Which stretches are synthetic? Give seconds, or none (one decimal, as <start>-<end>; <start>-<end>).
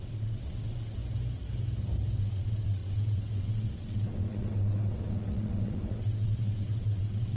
0.0-1.0; 2.2-7.4